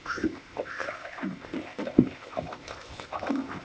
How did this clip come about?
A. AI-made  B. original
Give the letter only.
A